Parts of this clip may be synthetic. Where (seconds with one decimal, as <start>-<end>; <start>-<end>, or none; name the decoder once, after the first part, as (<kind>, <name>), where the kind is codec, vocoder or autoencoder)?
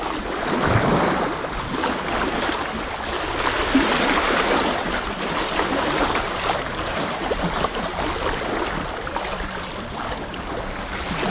5.7-7.5 (vocoder, BigVGAN v2)